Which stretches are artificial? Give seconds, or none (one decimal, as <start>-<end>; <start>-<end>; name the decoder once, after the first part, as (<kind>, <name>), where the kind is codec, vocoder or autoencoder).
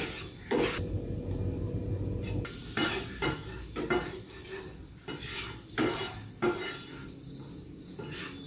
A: none